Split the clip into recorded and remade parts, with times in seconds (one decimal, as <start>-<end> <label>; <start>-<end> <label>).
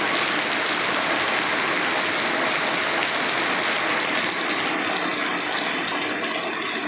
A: 0.0-6.9 recorded